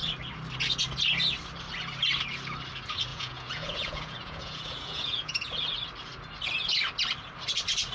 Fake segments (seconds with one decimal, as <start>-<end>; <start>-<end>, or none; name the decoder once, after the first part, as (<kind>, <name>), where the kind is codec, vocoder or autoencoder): 3.1-5.5 (vocoder, Vocos)